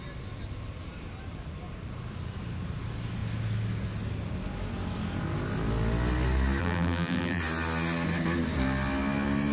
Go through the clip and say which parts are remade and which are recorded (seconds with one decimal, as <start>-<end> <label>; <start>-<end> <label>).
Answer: 0.0-6.6 recorded; 6.6-7.4 remade; 7.4-9.5 recorded